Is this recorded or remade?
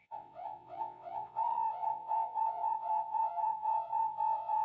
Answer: remade